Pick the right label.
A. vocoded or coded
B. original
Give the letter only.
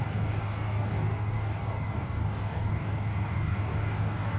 A